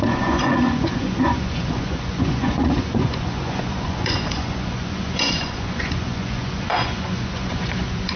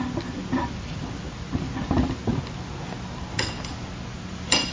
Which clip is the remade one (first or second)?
first